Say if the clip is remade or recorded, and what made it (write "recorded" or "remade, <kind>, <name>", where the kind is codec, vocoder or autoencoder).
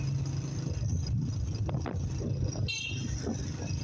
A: recorded